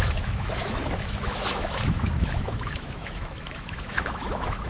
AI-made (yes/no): yes